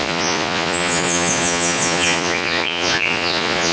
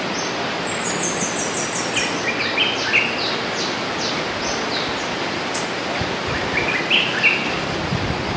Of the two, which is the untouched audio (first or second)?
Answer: second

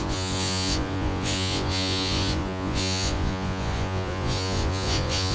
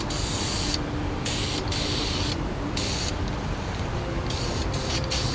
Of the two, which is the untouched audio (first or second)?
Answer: second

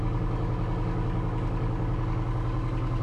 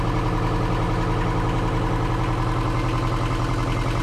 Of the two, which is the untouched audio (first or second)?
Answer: second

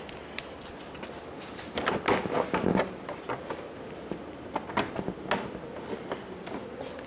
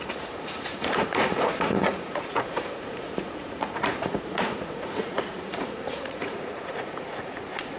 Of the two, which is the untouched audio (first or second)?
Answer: first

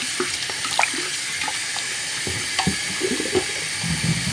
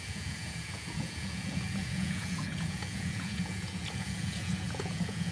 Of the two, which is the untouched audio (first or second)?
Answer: first